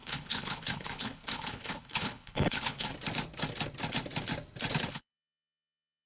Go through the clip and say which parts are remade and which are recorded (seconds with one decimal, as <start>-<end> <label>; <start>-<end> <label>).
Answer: 0.0-2.9 remade; 2.9-4.9 recorded; 4.9-6.1 remade